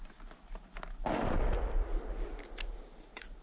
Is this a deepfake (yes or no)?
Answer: no